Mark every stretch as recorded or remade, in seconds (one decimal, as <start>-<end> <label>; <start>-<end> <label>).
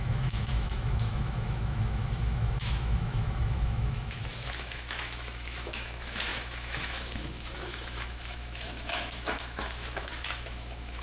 0.0-11.0 remade